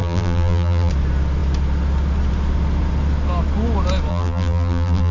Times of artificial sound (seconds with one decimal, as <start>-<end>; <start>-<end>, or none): 0.0-0.9; 4.1-5.1

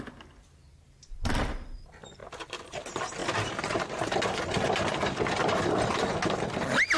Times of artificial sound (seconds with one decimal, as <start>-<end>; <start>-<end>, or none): 0.6-1.3; 2.2-2.8; 3.2-4.2

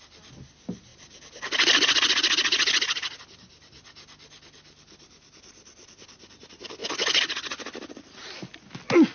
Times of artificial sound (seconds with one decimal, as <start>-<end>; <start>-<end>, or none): none

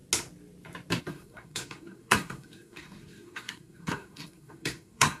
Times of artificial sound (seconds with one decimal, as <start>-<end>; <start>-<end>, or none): 1.0-5.2